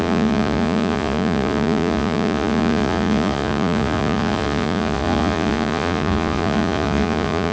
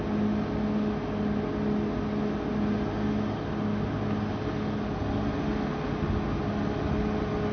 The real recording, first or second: second